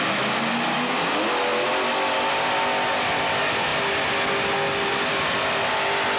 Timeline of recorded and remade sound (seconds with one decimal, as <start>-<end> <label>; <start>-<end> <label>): 0.0-6.2 recorded